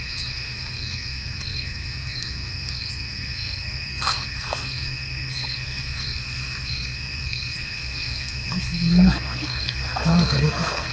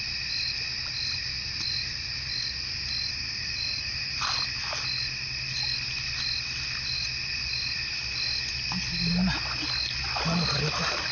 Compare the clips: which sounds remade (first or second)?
first